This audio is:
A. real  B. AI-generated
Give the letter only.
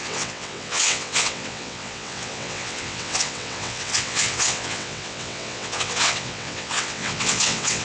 B